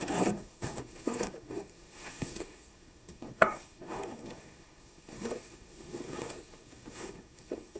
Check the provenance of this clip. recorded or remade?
remade